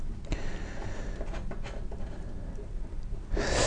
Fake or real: real